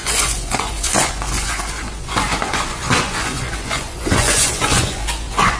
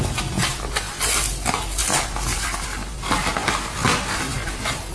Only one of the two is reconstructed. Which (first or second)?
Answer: first